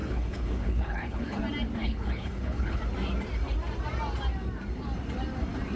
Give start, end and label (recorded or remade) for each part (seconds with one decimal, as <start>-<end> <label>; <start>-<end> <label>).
0.0-1.4 remade; 1.4-1.8 recorded; 1.8-2.8 remade; 2.8-5.8 recorded